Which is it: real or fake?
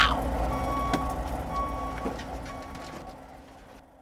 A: real